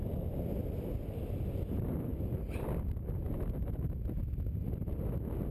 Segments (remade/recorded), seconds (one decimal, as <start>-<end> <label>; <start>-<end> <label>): 0.0-5.5 recorded

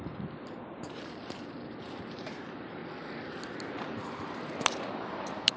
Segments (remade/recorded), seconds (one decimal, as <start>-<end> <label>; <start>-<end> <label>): 0.0-2.8 remade; 2.8-3.5 recorded; 3.5-5.6 remade

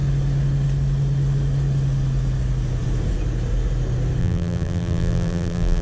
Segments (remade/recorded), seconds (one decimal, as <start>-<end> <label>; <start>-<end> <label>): 0.0-4.2 recorded; 4.2-5.8 remade

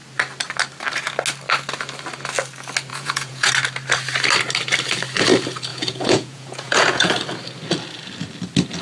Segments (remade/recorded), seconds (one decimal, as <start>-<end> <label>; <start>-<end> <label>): 0.0-2.9 recorded; 2.9-3.5 remade; 3.5-5.7 recorded; 5.7-7.1 remade; 7.1-8.8 recorded